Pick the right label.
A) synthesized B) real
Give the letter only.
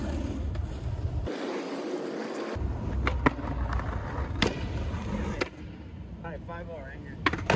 B